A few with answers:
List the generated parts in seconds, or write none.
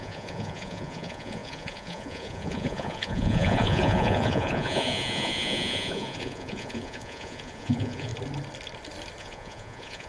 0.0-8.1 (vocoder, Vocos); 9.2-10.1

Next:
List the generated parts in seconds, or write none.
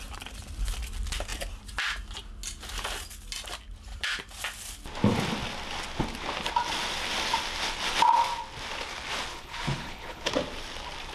9.3-10.3 (codec, HILCodec)